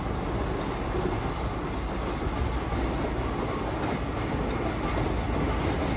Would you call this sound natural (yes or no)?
yes